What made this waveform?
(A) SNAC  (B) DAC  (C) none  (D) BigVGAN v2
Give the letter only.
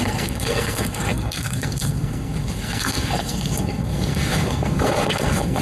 A